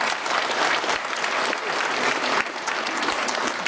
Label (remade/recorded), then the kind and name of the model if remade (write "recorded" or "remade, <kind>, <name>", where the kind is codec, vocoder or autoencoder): recorded